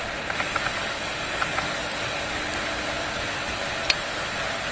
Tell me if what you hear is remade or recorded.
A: recorded